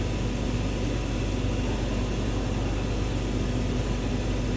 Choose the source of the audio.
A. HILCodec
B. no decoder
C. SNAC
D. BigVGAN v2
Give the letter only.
B